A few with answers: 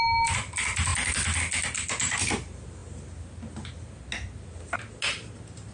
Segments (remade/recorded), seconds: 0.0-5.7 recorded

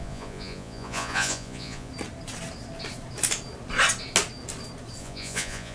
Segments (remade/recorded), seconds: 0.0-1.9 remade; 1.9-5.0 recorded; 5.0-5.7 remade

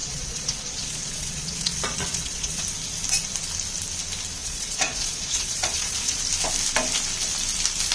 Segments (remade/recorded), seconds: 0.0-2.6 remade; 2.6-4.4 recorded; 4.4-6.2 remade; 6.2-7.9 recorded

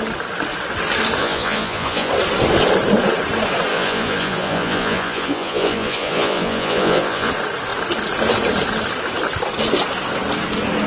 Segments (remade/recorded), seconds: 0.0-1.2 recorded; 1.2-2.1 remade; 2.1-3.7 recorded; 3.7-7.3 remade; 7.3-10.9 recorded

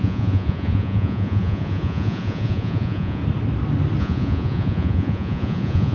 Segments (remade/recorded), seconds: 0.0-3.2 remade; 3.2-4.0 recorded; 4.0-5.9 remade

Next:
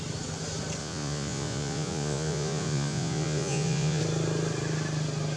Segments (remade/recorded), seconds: 0.0-0.8 recorded; 0.8-4.0 remade; 4.0-5.4 recorded

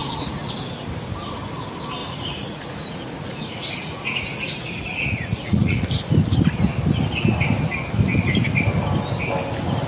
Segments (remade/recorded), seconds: 0.0-0.5 remade; 0.5-2.0 recorded; 2.0-5.8 remade; 5.8-9.9 recorded

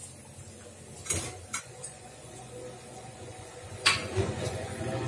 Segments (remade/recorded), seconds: 0.0-1.6 recorded; 1.6-5.1 remade